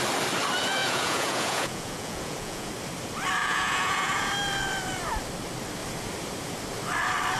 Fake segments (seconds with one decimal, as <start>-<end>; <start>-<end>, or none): 0.8-2.7; 3.4-4.3

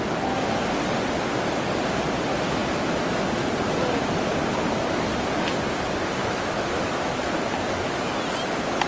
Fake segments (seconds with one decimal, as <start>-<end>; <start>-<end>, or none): 6.2-7.2

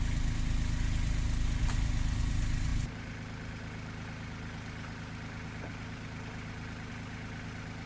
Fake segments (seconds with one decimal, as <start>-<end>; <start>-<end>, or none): none

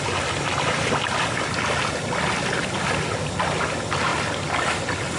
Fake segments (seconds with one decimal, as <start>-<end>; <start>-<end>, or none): none